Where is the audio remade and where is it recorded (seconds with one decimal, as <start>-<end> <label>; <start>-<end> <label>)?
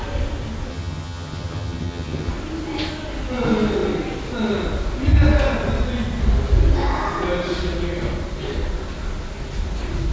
0.0-0.7 recorded; 0.7-2.3 remade; 2.3-10.1 recorded